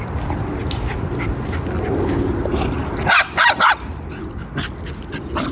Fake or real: real